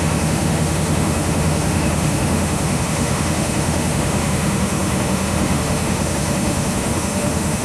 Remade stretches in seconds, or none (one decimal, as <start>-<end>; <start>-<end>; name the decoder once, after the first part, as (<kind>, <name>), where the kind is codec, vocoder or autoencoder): 0.0-7.6 (autoencoder, DAC-VAE)